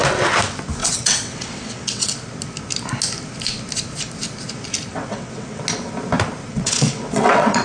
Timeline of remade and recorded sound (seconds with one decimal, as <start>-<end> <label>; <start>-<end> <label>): 0.0-0.8 recorded; 0.8-2.1 remade; 2.1-4.9 recorded; 4.9-5.6 remade; 5.6-6.5 recorded; 6.5-7.6 remade